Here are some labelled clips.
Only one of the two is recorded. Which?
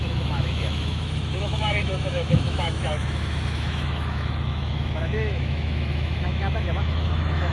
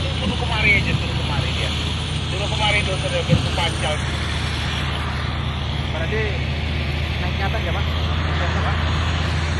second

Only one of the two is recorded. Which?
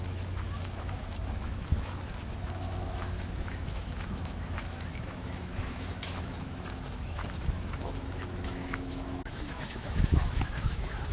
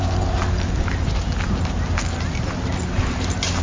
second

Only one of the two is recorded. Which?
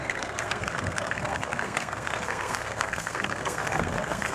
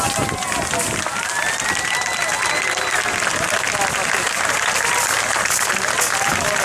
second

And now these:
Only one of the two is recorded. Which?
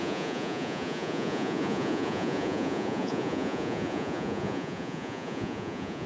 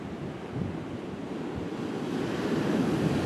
second